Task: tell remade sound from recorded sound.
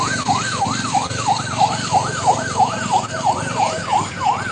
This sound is recorded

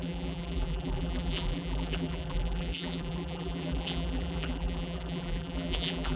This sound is remade